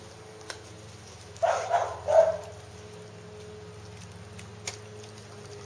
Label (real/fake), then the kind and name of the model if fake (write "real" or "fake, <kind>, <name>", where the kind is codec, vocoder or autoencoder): real